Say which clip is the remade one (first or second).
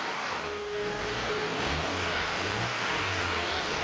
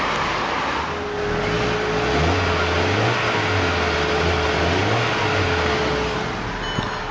first